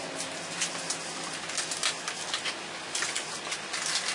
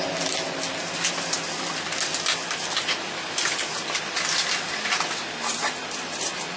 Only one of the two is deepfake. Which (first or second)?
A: second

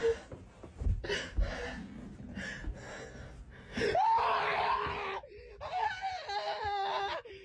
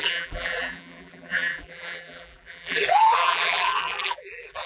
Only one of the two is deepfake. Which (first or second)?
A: second